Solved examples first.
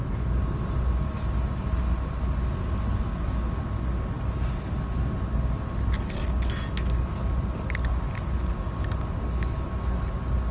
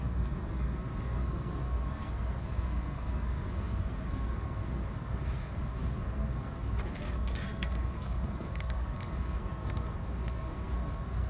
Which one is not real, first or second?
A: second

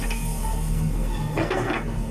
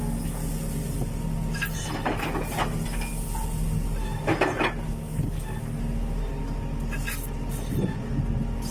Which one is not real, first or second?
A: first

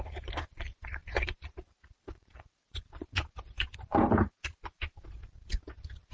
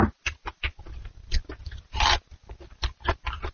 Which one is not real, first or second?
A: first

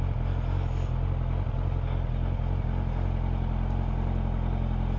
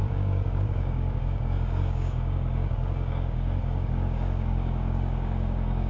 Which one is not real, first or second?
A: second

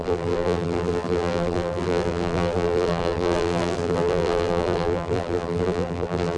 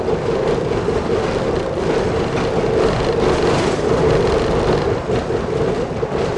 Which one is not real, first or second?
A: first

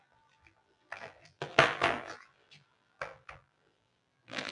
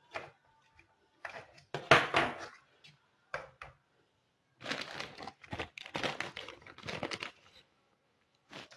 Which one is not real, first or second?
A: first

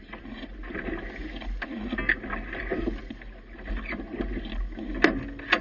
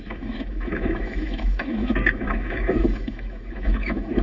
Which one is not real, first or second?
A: second